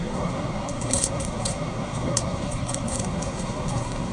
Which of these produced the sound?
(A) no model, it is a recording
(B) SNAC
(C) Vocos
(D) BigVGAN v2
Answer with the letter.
B